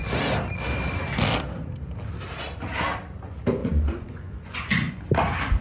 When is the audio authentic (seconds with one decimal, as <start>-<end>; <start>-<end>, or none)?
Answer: 0.0-3.6; 5.0-5.6